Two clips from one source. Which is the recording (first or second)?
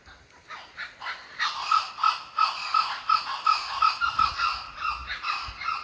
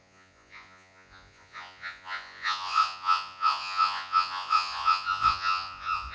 first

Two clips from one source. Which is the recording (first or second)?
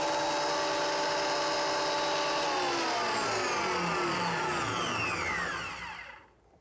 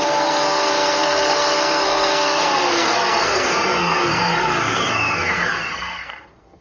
first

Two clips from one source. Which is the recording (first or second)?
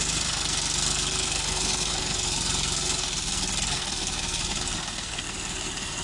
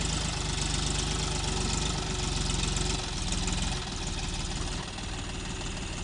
second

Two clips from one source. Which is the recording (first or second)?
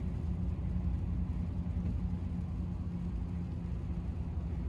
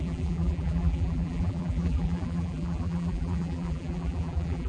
first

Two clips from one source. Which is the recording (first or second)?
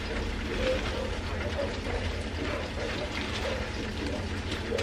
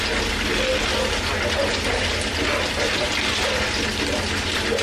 second